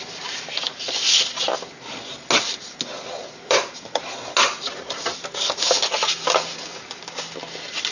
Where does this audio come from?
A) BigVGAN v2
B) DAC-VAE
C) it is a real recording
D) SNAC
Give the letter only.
C